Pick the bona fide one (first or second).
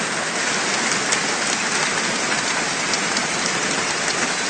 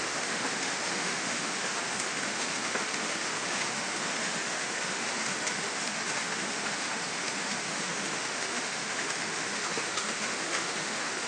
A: first